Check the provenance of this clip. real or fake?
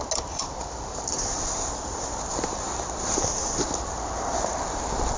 real